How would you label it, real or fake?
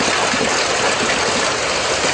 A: real